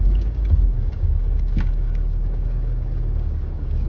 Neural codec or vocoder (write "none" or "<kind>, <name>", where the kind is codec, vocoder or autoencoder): codec, DAC